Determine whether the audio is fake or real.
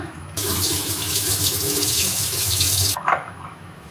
fake